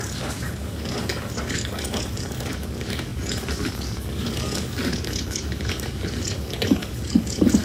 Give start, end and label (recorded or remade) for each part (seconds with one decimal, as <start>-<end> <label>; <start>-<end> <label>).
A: 0.0-7.6 remade